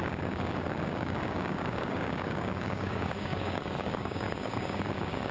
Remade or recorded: remade